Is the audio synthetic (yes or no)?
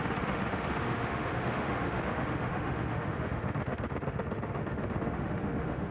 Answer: yes